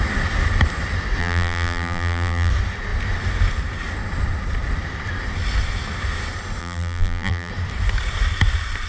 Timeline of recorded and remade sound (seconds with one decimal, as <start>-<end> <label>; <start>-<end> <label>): 0.0-1.2 recorded; 1.2-2.5 remade; 2.5-6.6 recorded; 6.6-7.5 remade; 7.5-8.9 recorded